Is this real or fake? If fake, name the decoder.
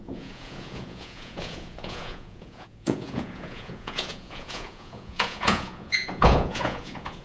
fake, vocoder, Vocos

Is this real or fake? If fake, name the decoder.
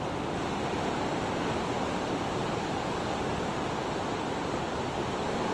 real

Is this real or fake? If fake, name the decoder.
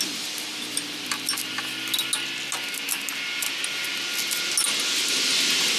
real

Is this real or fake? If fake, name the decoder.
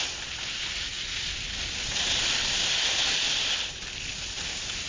real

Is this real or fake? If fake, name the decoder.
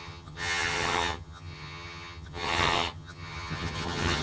fake, vocoder, HiFi-GAN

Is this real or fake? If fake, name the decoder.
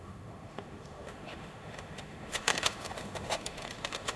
fake, autoencoder, DAC-VAE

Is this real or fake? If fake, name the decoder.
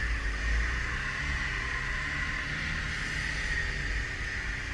real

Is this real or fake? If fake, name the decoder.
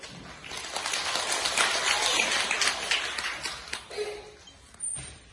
real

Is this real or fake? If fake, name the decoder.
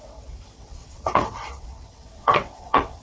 fake, vocoder, WaveNeXt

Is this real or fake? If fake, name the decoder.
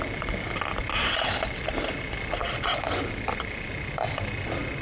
real